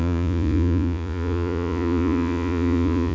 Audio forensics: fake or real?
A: fake